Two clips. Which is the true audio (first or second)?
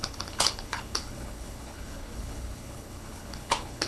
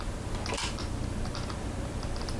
second